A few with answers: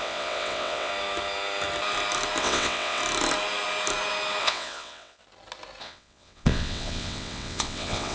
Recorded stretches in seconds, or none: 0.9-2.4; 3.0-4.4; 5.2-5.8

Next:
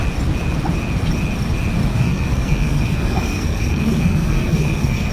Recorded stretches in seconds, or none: 0.0-1.9

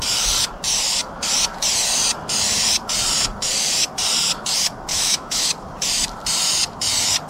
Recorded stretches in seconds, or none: 0.0-4.9; 5.5-7.3